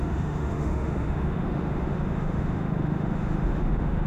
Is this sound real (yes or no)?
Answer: no